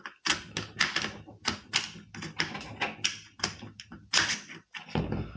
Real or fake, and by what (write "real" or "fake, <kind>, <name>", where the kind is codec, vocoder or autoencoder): real